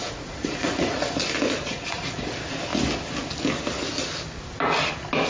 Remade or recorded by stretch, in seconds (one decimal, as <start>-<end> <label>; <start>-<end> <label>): 0.0-1.2 remade; 1.2-1.7 recorded; 1.7-2.3 remade; 2.3-5.3 recorded